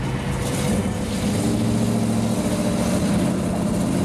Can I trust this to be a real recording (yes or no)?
yes